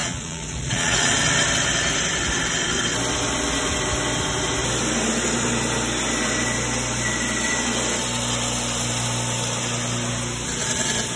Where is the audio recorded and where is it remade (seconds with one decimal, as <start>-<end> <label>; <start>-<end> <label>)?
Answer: 0.0-1.1 remade; 1.1-11.2 recorded